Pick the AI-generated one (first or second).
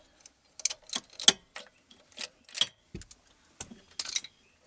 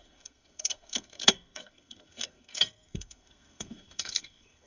second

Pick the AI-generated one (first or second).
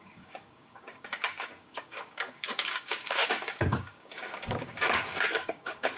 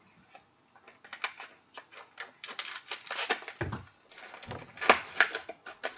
first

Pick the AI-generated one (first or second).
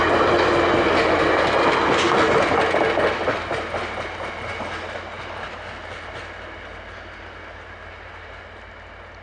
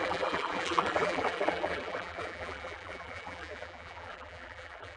second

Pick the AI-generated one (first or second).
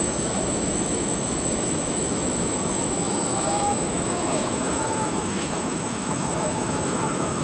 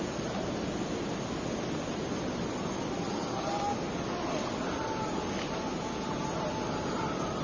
first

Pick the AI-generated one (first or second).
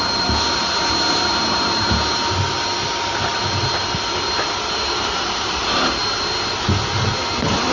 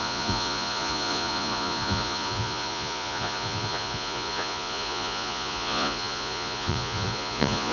second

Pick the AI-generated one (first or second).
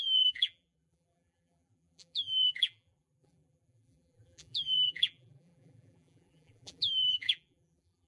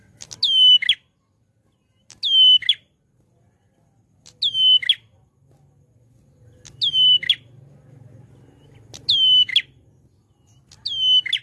first